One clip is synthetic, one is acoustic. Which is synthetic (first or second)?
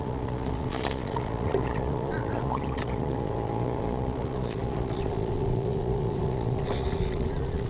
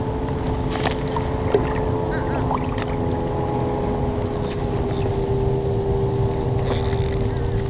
first